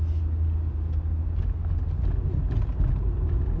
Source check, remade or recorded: recorded